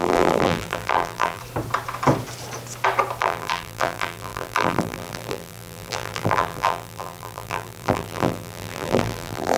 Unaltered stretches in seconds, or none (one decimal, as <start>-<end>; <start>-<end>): 1.4-3.2